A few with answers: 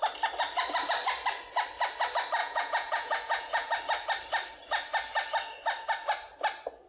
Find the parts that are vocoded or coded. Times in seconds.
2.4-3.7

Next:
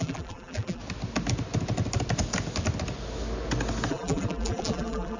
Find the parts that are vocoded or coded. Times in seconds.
0.0-0.8; 3.9-5.2

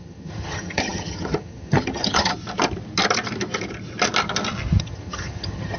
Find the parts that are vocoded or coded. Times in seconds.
0.0-2.3; 4.8-5.8

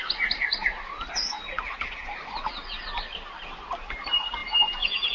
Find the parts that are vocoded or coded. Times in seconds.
4.4-5.1

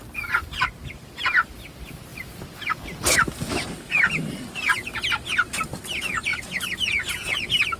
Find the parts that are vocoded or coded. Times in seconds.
none

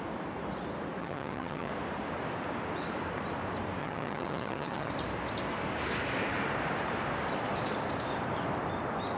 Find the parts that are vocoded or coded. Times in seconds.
1.0-1.7; 3.8-4.9

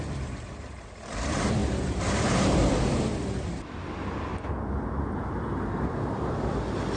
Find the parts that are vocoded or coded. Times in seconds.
0.0-4.3; 5.2-7.0

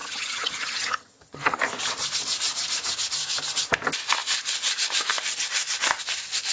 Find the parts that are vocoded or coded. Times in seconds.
0.0-1.6